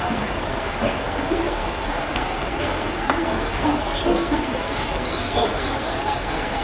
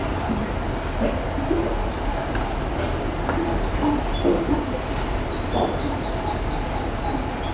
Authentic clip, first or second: second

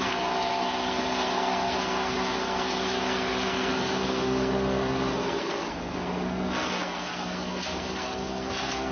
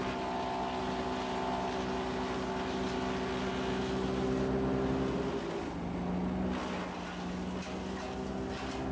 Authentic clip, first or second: second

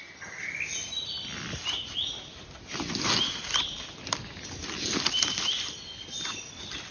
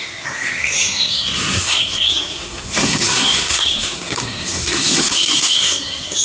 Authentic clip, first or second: first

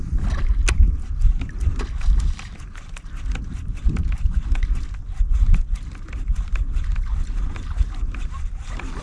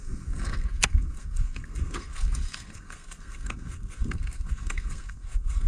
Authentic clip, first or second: first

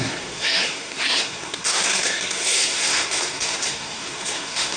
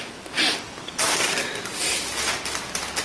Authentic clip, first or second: second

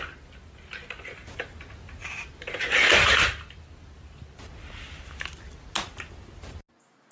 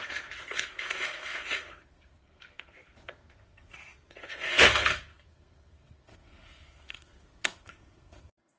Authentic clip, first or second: first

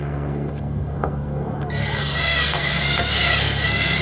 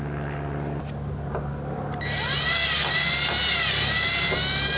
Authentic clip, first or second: second